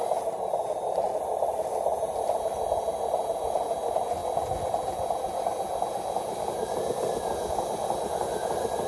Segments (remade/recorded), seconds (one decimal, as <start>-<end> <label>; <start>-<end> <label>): 0.0-4.2 remade; 4.2-7.5 recorded; 7.5-8.9 remade